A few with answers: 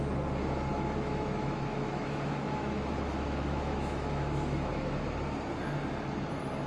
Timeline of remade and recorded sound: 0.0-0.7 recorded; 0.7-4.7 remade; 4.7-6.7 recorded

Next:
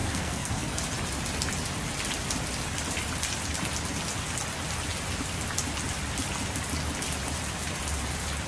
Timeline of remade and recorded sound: 0.0-0.8 remade; 0.8-8.5 recorded

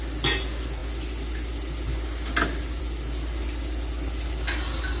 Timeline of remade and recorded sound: 0.0-5.0 recorded

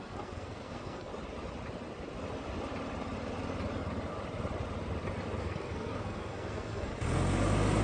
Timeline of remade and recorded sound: 0.0-1.1 remade; 1.1-5.4 recorded; 5.4-6.9 remade; 6.9-7.8 recorded

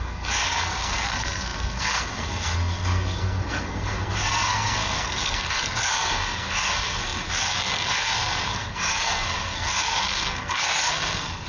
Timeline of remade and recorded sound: 0.0-11.5 remade

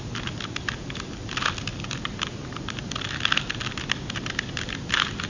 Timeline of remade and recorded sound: 0.0-1.7 recorded; 1.7-5.3 remade

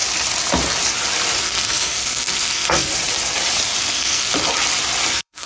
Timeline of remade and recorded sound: 0.0-1.4 recorded; 1.4-2.9 remade; 2.9-3.8 recorded; 3.8-4.3 remade; 4.3-5.1 recorded; 5.1-5.5 remade